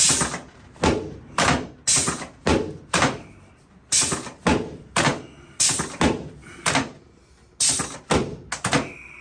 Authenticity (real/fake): real